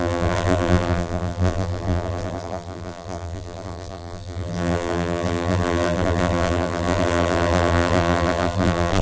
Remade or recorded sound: remade